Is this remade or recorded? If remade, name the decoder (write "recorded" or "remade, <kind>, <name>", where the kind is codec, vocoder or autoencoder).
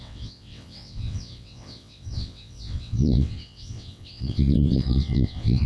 remade, vocoder, WaveNeXt